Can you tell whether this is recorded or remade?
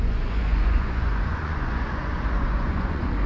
remade